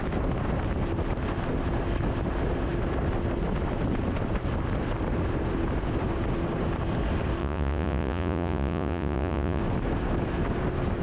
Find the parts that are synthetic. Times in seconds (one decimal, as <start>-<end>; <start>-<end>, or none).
7.4-9.6